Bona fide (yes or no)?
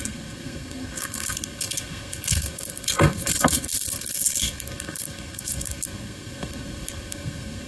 no